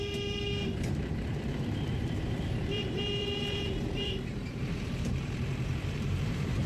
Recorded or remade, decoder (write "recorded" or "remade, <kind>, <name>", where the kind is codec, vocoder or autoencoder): remade, vocoder, BigVGAN v2